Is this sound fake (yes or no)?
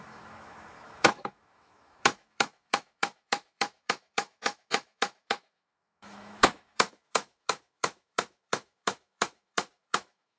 yes